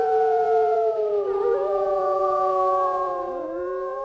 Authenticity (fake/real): fake